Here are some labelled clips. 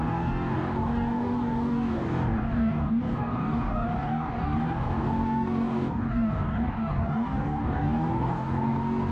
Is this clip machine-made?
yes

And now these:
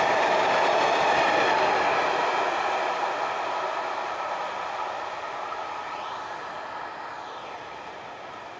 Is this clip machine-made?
no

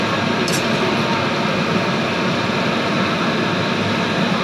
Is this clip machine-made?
no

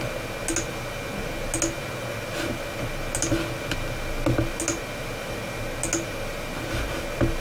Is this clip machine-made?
no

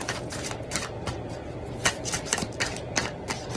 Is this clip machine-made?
no